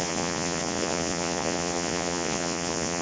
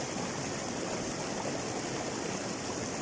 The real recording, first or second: second